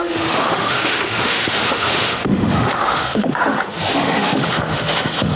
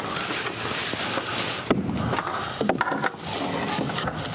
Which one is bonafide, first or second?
second